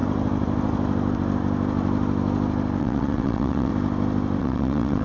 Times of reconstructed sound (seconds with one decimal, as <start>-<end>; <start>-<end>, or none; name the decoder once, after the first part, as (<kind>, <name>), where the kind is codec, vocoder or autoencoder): 2.8-3.7 (vocoder, WaveNeXt); 4.4-5.0